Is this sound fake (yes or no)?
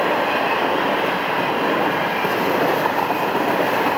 no